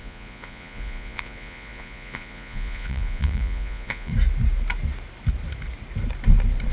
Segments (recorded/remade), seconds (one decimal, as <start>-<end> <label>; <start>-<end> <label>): 0.0-4.1 remade; 4.1-6.7 recorded